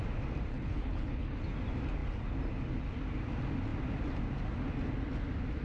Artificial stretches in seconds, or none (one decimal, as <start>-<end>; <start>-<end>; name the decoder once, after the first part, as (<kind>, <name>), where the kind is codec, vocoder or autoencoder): 0.5-1.4 (codec, HILCodec)